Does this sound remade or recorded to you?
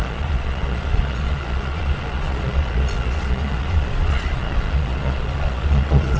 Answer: remade